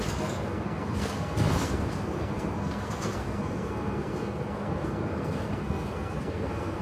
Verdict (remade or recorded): remade